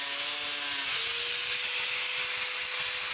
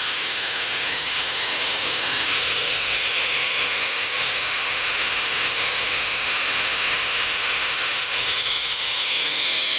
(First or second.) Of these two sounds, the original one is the first